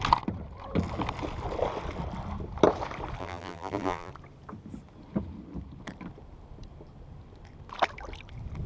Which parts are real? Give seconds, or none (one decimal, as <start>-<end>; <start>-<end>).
0.0-3.2; 4.1-8.7